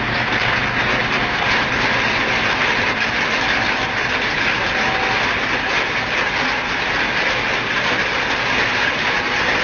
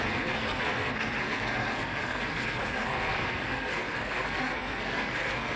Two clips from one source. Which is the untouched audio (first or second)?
first